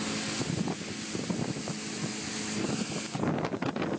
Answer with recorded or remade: recorded